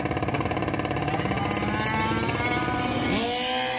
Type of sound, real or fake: real